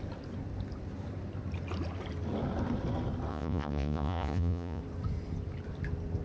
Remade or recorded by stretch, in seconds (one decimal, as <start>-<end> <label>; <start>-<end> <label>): 0.0-3.3 recorded; 3.3-4.8 remade; 4.8-6.2 recorded